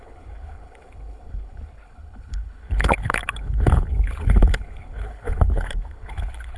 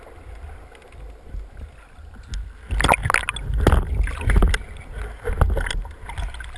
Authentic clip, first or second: second